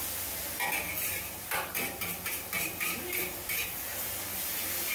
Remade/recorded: recorded